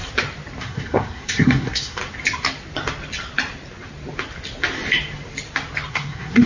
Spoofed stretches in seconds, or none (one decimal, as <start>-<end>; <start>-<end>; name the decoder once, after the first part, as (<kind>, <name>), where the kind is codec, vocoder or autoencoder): 0.6-2.0 (codec, SNAC); 5.9-6.5